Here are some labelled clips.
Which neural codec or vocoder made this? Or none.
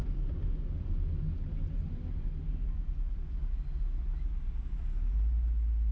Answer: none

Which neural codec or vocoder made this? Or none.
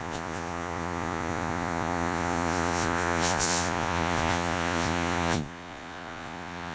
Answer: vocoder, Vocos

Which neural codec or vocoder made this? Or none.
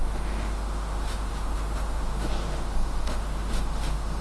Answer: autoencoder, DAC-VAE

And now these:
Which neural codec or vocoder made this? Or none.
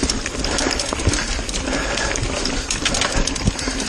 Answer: vocoder, BigVGAN v2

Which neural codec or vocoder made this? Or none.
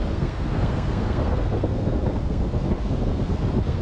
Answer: codec, SNAC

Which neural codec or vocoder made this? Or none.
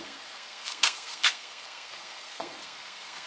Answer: codec, SNAC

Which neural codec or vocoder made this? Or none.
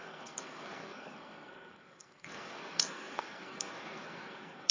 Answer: codec, SNAC